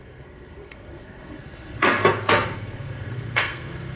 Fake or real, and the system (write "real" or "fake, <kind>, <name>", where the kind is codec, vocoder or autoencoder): fake, codec, SNAC